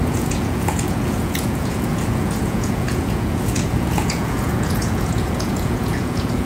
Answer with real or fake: fake